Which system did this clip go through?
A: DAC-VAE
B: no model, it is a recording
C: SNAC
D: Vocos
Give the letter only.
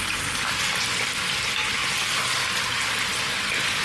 B